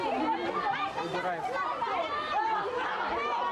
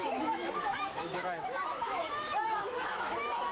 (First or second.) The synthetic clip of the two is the second